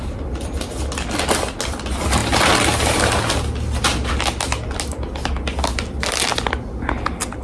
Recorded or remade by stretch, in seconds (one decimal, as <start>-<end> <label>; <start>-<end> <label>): 0.0-7.4 recorded